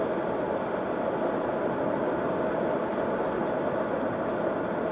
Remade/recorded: recorded